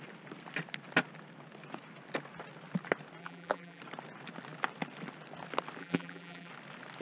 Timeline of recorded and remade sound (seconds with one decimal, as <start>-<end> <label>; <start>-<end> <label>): 0.0-3.2 recorded; 3.2-3.8 remade; 3.8-5.8 recorded; 5.8-6.5 remade; 6.5-7.0 recorded